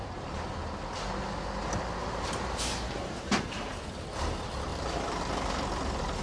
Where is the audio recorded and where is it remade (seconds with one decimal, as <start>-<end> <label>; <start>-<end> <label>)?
0.0-2.0 recorded; 2.0-3.2 remade; 3.2-4.7 recorded; 4.7-5.2 remade; 5.2-6.2 recorded